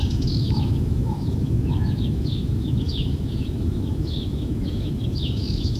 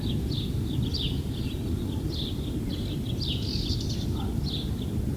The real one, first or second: second